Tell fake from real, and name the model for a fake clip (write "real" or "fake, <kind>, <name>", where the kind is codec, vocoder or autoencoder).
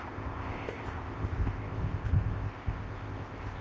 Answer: fake, codec, ZipCodec